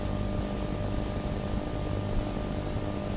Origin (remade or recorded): recorded